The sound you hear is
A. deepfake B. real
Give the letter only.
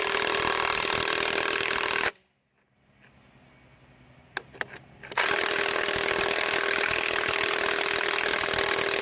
B